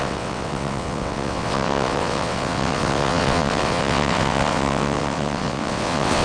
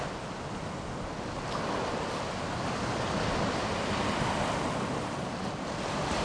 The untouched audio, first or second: second